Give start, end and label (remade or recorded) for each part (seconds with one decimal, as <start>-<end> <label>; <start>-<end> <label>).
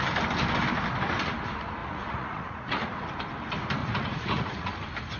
0.0-1.8 recorded; 1.8-3.1 remade; 3.1-3.8 recorded; 3.8-4.7 remade; 4.7-5.2 recorded